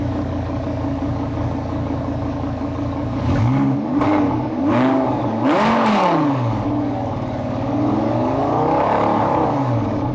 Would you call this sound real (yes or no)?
no